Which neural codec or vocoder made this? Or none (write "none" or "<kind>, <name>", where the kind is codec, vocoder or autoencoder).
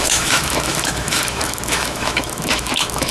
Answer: autoencoder, DAC-VAE